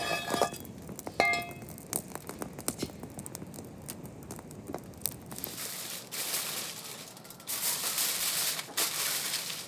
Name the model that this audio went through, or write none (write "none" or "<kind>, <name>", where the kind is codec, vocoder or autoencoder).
none